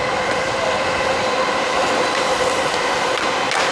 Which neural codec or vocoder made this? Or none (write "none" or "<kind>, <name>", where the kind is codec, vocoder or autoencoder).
none